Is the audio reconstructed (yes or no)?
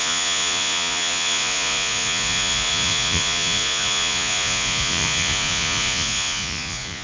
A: yes